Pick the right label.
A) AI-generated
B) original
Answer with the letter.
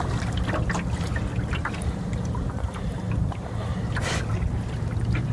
B